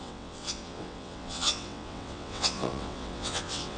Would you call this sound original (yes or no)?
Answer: no